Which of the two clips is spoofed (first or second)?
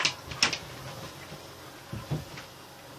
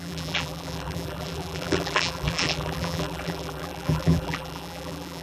second